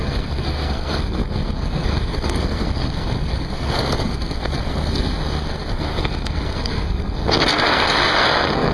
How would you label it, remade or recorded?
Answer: remade